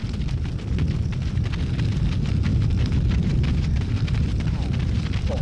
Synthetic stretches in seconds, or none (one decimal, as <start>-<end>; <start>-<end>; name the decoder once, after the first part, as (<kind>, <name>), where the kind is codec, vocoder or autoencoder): 2.5-5.4 (vocoder, BigVGAN v2)